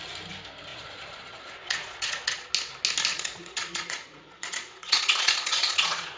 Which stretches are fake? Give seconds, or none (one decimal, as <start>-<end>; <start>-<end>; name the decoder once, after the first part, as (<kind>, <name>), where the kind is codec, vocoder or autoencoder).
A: 0.7-2.5 (vocoder, Vocos); 3.1-6.2